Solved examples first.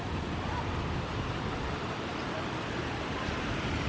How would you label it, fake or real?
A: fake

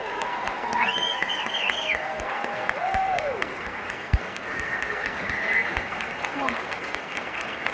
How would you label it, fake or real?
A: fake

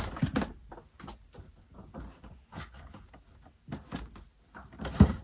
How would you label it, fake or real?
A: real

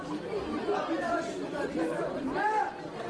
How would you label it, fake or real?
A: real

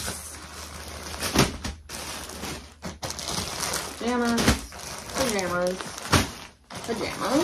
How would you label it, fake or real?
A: real